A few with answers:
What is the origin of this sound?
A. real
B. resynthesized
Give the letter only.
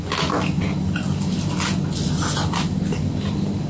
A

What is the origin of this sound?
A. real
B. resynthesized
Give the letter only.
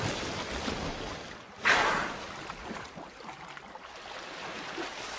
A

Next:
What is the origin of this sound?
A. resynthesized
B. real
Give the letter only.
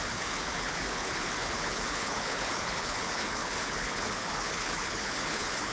A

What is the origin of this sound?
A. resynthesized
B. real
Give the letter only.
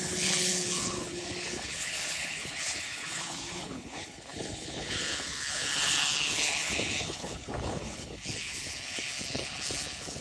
A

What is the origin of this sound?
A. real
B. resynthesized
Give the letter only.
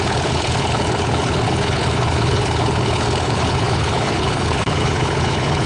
B